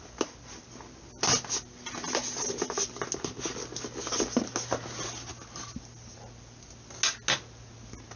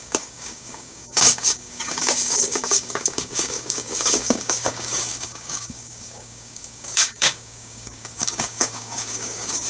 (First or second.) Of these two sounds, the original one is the first